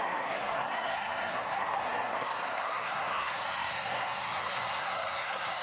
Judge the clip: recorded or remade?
remade